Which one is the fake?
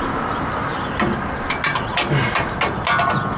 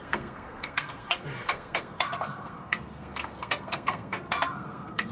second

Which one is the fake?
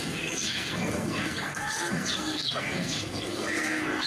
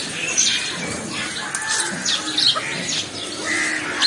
first